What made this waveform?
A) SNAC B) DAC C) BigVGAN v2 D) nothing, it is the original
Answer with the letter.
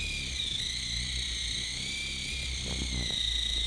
D